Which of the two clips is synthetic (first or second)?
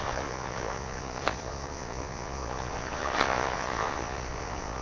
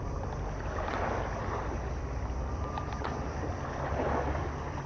first